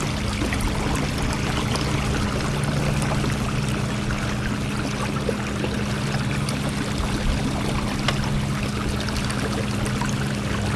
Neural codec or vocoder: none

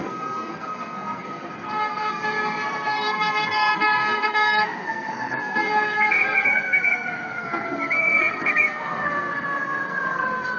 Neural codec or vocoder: codec, SNAC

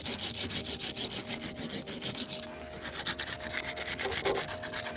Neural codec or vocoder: none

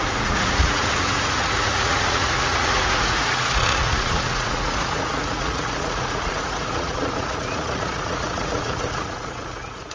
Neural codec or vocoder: vocoder, Vocos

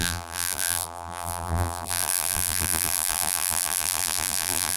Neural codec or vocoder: vocoder, BigVGAN v2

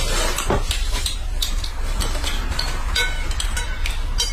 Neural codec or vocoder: vocoder, BigVGAN v2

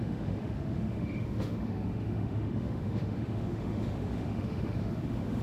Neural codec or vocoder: autoencoder, DAC-VAE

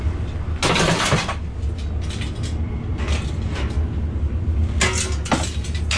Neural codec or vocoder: none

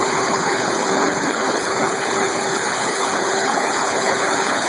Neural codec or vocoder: codec, HILCodec